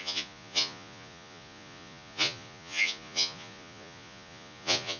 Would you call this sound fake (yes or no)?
yes